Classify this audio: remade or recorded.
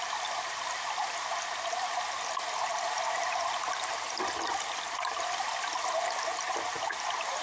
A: recorded